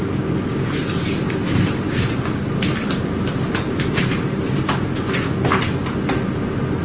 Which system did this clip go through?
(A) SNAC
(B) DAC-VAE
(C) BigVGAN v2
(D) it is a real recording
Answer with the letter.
D